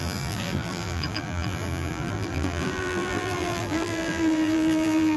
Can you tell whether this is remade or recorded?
remade